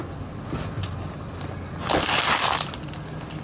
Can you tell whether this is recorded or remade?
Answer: recorded